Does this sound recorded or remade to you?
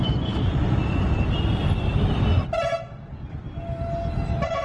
recorded